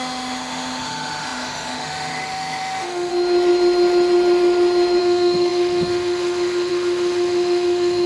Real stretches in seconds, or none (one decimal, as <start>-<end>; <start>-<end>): 3.1-5.0